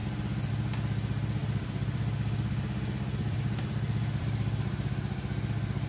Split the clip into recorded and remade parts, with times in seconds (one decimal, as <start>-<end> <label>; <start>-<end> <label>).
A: 0.0-1.4 recorded; 1.4-4.9 remade; 4.9-5.9 recorded

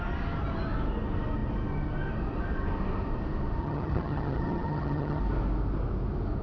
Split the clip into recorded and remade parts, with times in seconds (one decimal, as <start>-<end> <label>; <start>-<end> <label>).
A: 0.0-3.6 recorded; 3.6-5.2 remade; 5.2-6.4 recorded